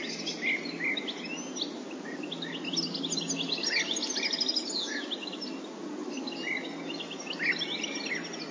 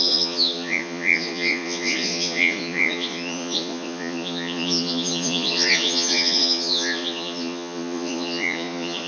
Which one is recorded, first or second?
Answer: first